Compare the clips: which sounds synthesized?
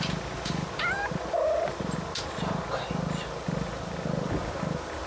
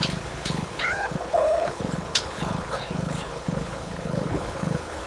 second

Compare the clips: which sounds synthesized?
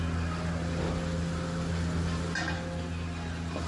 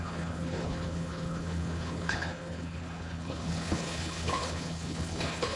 second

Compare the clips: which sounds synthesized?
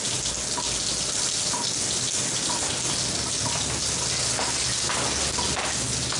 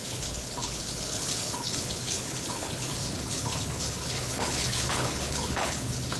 second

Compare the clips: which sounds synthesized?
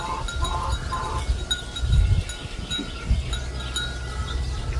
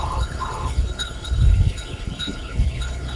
second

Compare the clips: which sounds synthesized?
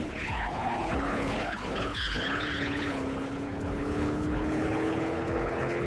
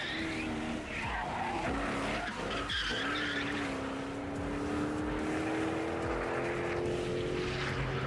first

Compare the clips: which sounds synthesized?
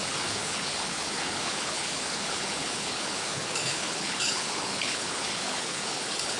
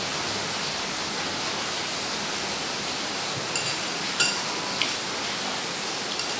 first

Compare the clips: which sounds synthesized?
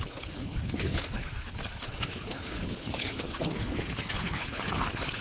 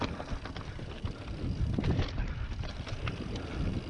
first